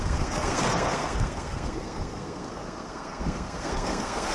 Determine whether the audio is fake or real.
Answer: fake